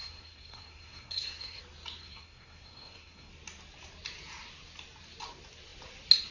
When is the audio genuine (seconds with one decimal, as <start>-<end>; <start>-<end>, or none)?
1.6-2.0; 3.3-6.3